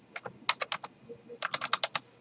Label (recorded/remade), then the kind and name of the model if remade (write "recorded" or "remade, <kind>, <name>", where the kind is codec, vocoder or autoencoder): recorded